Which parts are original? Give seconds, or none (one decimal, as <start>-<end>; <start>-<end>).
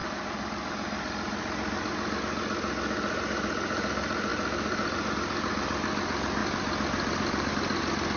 0.0-4.3; 5.1-8.2